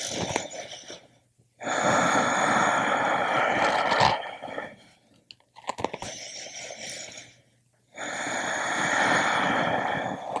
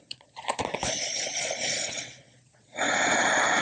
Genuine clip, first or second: first